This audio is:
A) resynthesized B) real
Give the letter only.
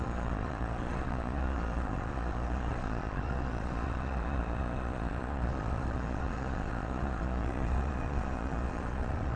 A